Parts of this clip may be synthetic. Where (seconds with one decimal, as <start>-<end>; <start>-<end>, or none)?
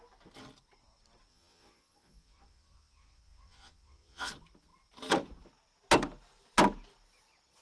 1.3-4.3